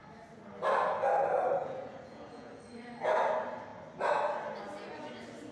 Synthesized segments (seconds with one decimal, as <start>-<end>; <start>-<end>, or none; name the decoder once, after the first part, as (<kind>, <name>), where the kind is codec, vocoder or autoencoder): 1.6-2.6 (vocoder, Vocos)